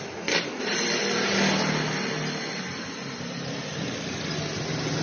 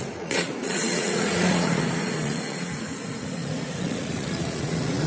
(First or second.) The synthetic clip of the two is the second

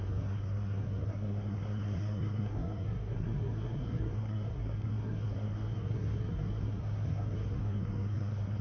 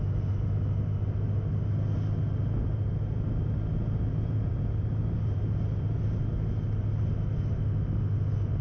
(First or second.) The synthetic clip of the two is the first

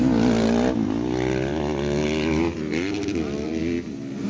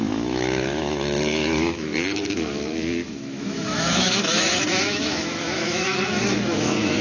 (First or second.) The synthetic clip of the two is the second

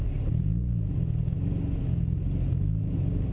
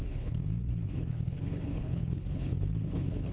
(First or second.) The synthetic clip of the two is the second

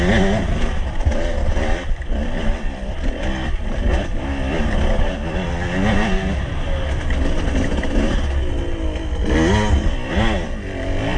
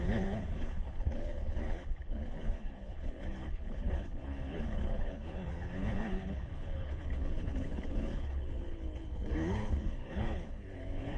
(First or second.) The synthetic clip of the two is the second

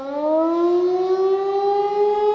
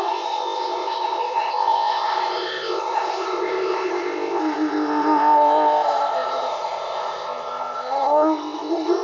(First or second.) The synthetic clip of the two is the second